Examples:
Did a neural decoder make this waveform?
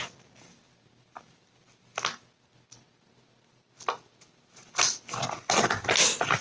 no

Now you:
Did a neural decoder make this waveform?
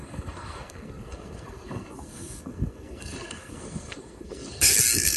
yes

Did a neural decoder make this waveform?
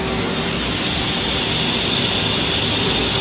no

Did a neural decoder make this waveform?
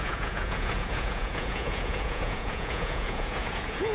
yes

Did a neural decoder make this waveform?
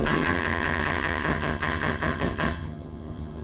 yes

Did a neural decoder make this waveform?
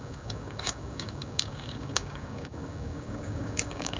yes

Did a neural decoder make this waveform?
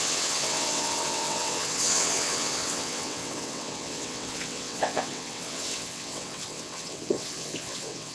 yes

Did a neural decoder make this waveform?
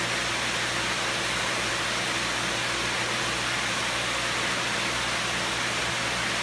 no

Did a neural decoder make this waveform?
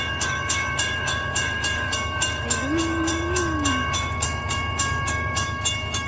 yes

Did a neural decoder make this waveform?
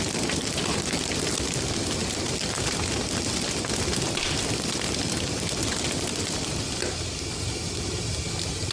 no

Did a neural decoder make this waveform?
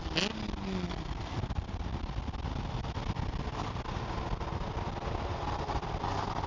no